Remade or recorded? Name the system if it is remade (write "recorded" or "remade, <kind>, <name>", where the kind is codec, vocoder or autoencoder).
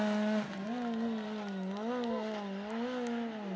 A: recorded